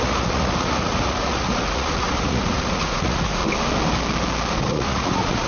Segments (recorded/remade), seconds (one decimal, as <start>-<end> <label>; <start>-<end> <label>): 0.0-3.4 remade; 3.4-4.6 recorded; 4.6-5.5 remade